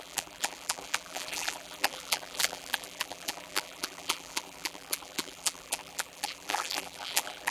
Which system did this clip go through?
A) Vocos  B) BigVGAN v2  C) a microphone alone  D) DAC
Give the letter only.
B